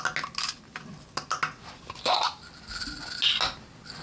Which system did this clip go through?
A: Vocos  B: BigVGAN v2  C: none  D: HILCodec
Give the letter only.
C